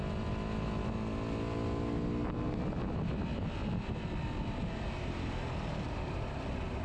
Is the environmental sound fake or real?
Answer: real